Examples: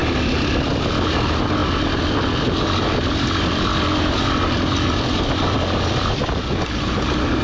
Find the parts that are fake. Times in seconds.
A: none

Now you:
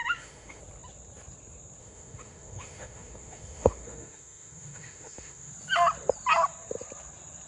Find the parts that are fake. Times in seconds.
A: 0.0-0.6 (autoencoder, DAC-VAE); 1.8-5.5

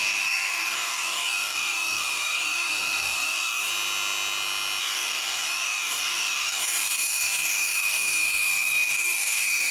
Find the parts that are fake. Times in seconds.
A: 0.0-3.7 (codec, DAC); 4.8-9.7

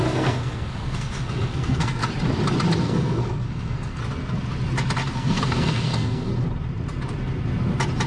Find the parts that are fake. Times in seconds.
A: 0.0-2.0 (codec, SNAC); 2.8-4.0; 5.1-6.3

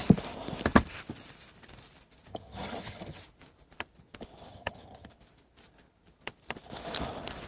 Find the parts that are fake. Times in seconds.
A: 2.3-3.2 (vocoder, HiFi-GAN); 4.5-5.1

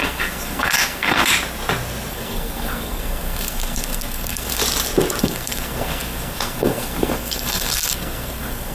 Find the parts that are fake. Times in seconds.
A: 0.0-1.3 (codec, SNAC); 2.1-4.6; 5.2-8.7

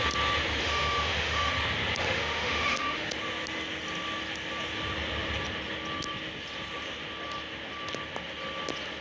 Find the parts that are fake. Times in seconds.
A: 0.6-1.5 (autoencoder, DAC-VAE); 2.0-3.1